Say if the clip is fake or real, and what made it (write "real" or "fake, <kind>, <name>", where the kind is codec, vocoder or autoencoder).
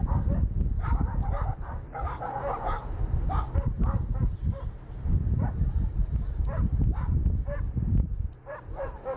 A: real